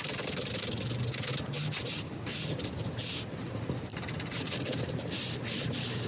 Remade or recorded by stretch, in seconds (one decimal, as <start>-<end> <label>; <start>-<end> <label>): 0.0-3.9 recorded; 3.9-6.1 remade